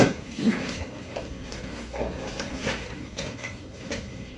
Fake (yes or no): yes